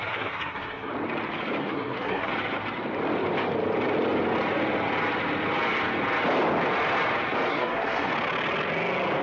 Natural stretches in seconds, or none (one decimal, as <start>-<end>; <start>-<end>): 0.9-1.6; 2.3-7.5; 8.1-9.2